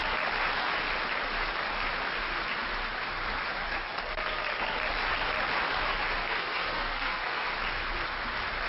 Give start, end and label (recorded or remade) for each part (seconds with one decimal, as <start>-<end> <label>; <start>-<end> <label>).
0.0-6.2 recorded; 6.2-7.5 remade; 7.5-8.7 recorded